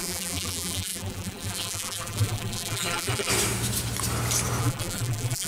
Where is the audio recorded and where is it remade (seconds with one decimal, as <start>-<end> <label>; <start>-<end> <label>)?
0.0-3.3 remade; 3.3-4.6 recorded; 4.6-5.5 remade